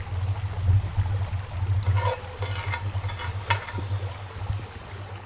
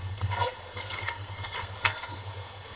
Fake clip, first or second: second